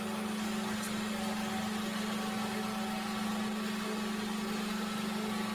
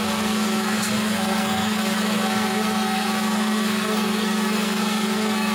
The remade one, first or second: second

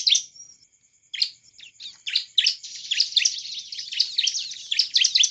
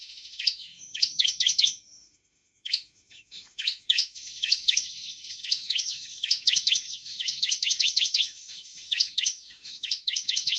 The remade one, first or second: second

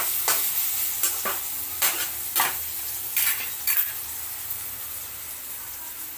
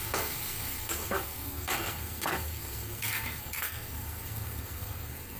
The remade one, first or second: second